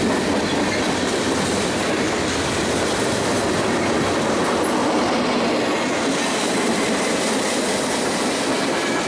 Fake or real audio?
real